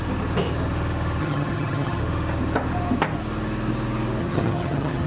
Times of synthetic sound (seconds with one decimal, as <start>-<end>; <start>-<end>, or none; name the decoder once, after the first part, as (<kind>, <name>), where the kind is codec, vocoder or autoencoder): 1.2-2.0 (vocoder, HiFi-GAN); 4.2-5.1

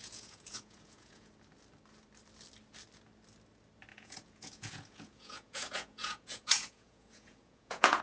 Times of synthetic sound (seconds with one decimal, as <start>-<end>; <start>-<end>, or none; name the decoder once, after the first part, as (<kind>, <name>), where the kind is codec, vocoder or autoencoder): 0.0-1.3 (vocoder, Vocos); 3.9-8.0

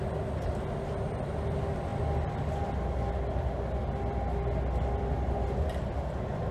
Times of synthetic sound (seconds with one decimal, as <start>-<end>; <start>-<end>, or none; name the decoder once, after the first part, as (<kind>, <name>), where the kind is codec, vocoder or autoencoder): none

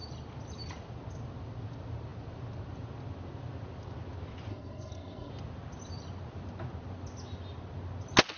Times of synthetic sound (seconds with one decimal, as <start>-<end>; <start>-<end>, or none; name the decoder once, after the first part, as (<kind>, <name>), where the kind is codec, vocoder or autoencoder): 4.5-5.3 (codec, SNAC)